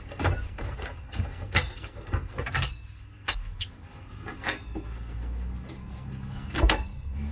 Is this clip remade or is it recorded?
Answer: remade